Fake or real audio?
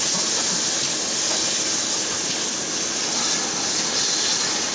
real